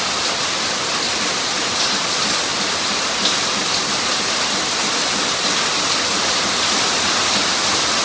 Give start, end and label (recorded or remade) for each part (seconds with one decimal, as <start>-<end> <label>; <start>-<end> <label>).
0.0-8.0 recorded